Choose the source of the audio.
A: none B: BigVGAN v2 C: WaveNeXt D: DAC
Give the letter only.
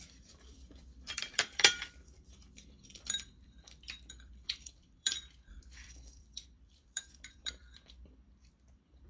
B